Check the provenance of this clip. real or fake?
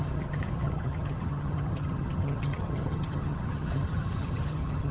fake